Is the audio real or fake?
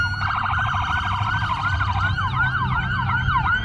real